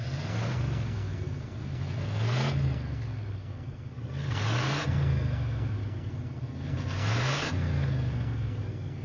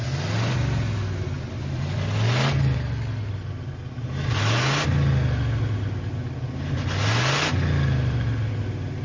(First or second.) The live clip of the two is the second